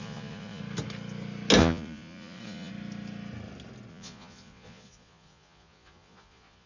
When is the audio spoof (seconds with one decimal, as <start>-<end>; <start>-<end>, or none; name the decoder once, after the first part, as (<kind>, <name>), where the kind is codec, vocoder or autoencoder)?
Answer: 0.0-0.6 (vocoder, Vocos); 1.6-2.7; 3.9-6.7